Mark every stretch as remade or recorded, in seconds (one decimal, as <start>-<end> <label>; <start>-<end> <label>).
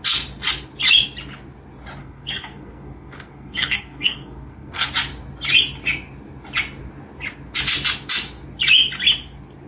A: 0.0-2.0 recorded; 2.0-4.9 remade; 4.9-9.7 recorded